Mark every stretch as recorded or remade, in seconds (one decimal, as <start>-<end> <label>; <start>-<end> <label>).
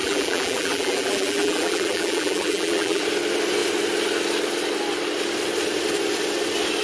0.0-3.0 remade; 3.0-6.8 recorded